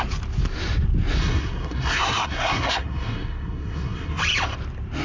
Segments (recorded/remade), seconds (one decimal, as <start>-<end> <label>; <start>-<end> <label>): 0.0-1.2 recorded; 1.2-4.2 remade; 4.2-5.0 recorded